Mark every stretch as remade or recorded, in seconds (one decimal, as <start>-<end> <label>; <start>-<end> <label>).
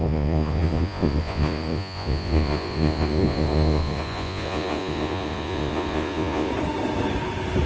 0.0-6.5 remade; 6.5-7.7 recorded